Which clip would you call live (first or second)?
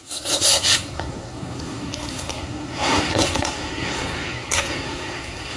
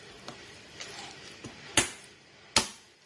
second